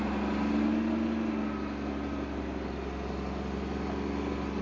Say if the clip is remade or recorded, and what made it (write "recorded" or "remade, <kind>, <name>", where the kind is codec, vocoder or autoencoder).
recorded